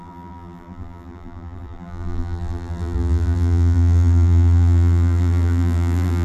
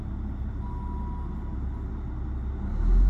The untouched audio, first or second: second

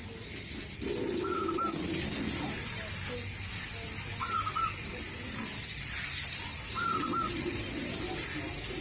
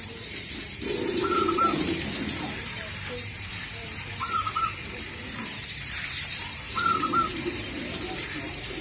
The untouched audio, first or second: first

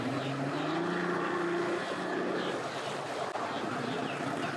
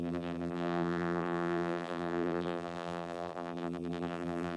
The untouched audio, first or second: first